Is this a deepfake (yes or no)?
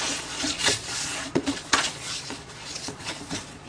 yes